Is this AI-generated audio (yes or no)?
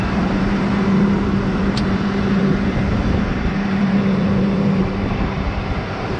yes